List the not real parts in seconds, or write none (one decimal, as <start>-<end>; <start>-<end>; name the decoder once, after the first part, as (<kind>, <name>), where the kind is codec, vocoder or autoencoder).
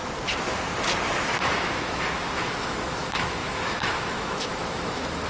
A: 1.4-5.3 (autoencoder, DAC-VAE)